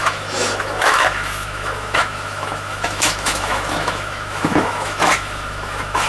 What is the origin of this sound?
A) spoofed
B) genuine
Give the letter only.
A